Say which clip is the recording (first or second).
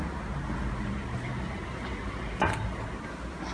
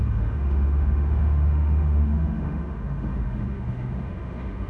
first